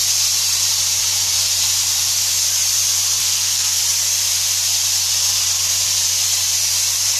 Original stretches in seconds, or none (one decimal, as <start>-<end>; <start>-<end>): 0.0-3.2; 3.8-7.2